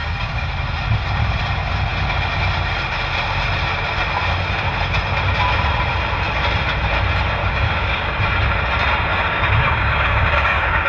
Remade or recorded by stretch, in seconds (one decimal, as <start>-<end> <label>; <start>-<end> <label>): 0.0-0.5 remade; 0.5-7.4 recorded; 7.4-8.1 remade; 8.1-9.1 recorded; 9.1-10.9 remade